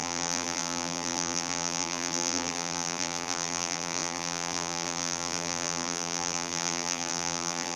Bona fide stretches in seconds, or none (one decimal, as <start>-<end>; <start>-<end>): none